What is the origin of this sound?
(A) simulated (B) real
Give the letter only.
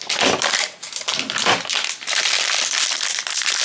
B